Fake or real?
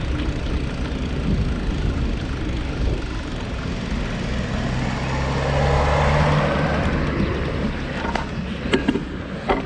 real